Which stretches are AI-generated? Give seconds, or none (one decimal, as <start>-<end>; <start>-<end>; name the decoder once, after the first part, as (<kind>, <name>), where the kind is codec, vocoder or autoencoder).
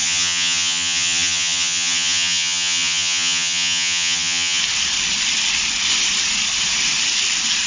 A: 0.0-4.6 (vocoder, HiFi-GAN)